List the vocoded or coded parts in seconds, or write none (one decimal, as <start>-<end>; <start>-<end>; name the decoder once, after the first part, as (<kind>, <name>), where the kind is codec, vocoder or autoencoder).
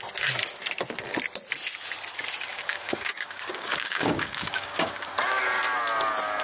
2.5-4.9 (codec, DAC)